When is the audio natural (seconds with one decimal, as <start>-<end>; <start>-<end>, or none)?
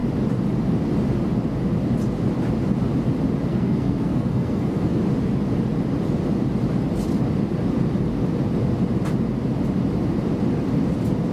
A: 0.0-3.5; 5.0-11.3